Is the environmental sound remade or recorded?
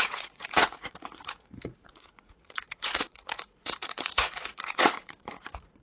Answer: remade